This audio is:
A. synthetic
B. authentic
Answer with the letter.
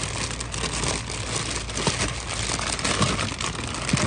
B